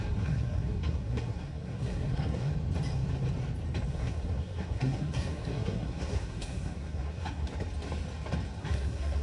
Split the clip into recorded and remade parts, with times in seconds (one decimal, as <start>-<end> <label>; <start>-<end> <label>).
0.0-2.5 remade; 2.5-3.9 recorded; 3.9-7.5 remade; 7.5-8.6 recorded; 8.6-9.2 remade